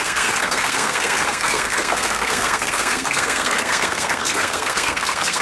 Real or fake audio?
fake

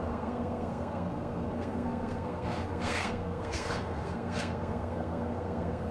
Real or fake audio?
fake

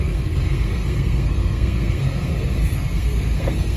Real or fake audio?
fake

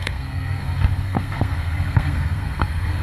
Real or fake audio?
fake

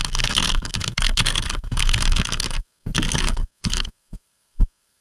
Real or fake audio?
fake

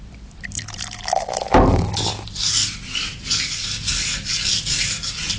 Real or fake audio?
real